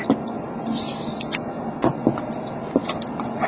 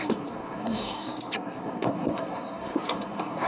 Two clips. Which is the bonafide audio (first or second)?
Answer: first